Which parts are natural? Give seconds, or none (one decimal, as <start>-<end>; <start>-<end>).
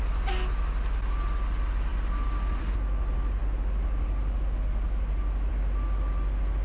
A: 0.0-6.6